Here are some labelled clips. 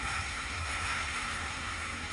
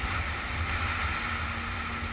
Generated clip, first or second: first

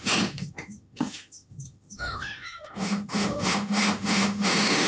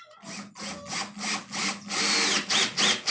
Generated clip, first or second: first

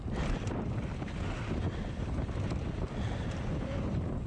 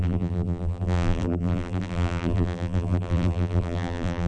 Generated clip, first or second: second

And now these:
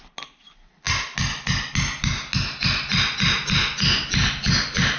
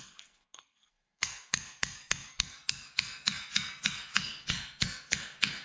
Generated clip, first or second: second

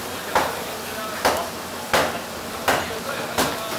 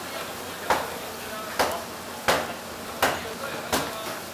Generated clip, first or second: first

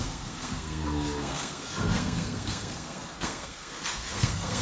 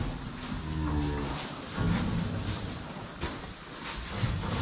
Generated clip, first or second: first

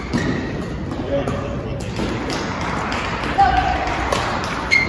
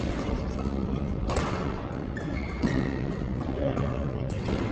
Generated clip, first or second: second